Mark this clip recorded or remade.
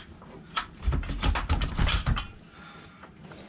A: recorded